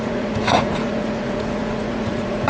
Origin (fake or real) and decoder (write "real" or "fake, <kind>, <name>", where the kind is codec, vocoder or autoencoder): fake, vocoder, Vocos